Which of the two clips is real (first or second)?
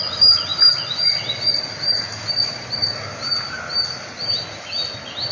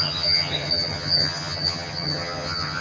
first